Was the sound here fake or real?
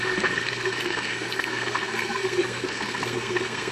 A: fake